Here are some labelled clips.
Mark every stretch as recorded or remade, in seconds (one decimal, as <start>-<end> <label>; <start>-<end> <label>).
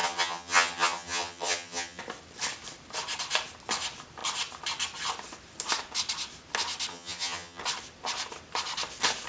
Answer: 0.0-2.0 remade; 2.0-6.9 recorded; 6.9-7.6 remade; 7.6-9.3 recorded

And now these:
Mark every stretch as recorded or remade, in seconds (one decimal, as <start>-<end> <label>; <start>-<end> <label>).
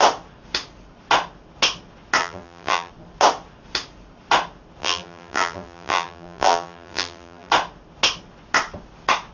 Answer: 0.0-2.2 recorded; 2.2-2.9 remade; 2.9-4.8 recorded; 4.8-7.5 remade; 7.5-9.3 recorded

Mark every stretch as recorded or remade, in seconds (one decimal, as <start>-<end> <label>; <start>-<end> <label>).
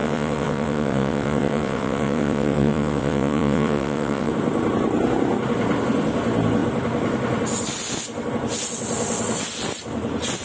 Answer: 0.0-4.3 remade; 4.3-10.4 recorded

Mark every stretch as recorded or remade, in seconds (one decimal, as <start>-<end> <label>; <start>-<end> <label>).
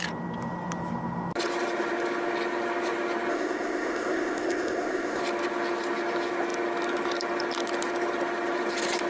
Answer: 0.0-3.3 recorded; 3.3-5.2 remade; 5.2-9.1 recorded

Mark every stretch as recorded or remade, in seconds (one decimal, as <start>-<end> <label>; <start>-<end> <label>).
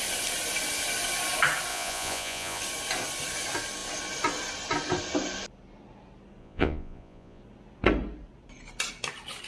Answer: 0.0-1.7 recorded; 1.7-2.6 remade; 2.6-6.4 recorded; 6.4-7.4 remade; 7.4-9.5 recorded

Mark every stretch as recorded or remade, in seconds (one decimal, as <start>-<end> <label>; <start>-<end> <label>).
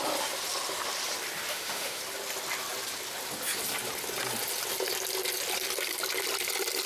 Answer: 0.0-1.5 recorded; 1.5-2.0 remade; 2.0-6.9 recorded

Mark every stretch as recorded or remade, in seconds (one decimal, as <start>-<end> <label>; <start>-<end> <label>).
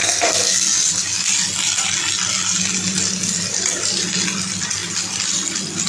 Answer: 0.0-0.6 remade; 0.6-5.9 recorded